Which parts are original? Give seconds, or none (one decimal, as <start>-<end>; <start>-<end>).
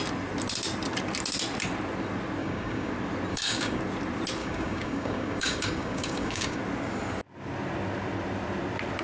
0.0-2.4; 2.9-3.3; 3.8-4.4; 6.6-9.0